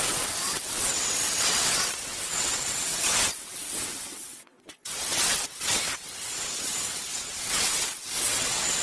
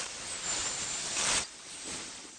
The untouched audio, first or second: second